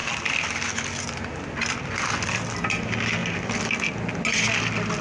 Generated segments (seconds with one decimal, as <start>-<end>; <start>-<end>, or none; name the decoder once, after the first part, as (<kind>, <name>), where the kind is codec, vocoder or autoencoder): none